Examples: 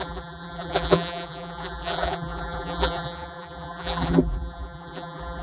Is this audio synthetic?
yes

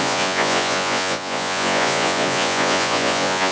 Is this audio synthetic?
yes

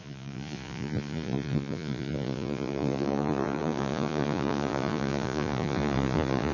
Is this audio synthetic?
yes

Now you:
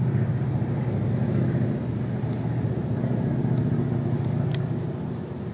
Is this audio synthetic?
no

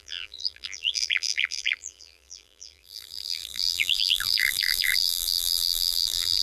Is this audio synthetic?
yes